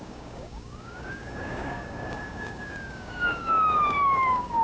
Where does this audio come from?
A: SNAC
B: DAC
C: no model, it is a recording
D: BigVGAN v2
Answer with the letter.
B